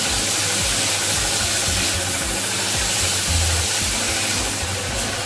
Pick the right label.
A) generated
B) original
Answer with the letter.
B